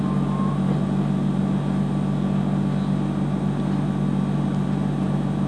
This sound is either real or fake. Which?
real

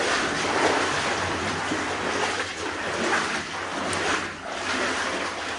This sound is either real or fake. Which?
real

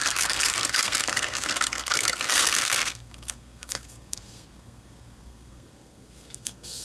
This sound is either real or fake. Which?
fake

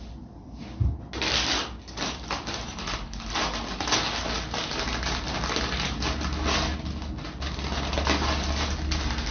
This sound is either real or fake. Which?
real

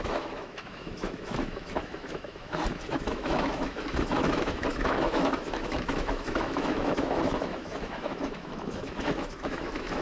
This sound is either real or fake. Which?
fake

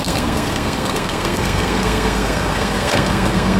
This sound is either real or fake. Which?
fake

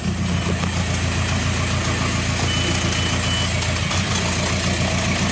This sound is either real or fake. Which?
real